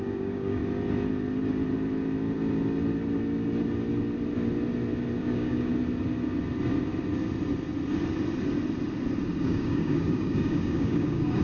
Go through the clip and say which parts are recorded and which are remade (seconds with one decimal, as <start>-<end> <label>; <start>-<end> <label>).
0.0-0.6 remade; 0.6-5.2 recorded; 5.2-5.7 remade; 5.7-9.4 recorded; 9.4-11.4 remade